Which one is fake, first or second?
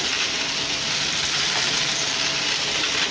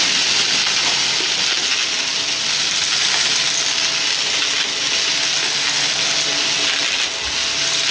first